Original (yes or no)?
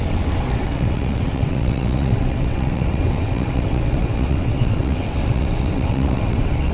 no